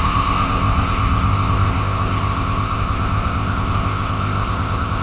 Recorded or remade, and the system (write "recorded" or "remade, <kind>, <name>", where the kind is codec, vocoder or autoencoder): remade, codec, ZipCodec